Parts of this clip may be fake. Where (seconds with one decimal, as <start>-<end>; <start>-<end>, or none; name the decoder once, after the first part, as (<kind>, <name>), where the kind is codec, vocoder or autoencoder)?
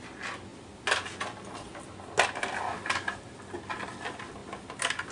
none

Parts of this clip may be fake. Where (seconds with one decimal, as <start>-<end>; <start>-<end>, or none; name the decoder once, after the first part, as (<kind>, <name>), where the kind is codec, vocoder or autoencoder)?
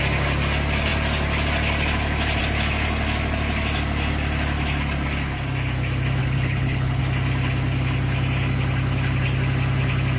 6.2-7.0 (codec, HILCodec)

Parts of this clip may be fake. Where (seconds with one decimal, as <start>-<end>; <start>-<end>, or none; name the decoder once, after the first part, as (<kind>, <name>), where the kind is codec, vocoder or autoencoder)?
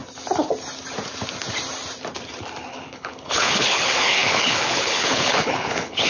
2.7-6.1 (codec, HILCodec)